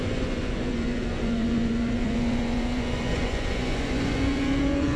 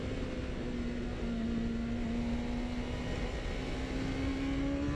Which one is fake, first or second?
first